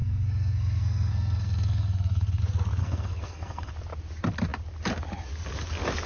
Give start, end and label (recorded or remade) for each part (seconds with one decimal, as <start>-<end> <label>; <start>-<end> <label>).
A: 0.0-2.4 remade; 2.4-2.8 recorded; 2.8-3.7 remade; 3.7-6.1 recorded